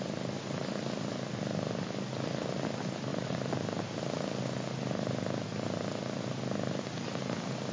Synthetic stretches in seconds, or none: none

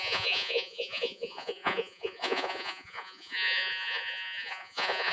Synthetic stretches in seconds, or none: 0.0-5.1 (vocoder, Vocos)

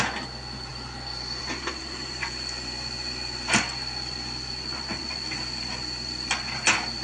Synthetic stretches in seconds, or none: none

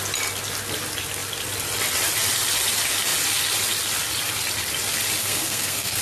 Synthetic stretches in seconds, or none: 5.2-6.0 (codec, SNAC)